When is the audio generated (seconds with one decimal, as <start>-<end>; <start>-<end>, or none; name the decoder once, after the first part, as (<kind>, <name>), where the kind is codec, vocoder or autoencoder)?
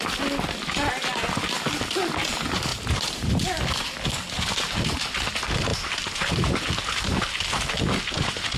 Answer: 2.7-3.3 (vocoder, BigVGAN v2); 5.7-6.7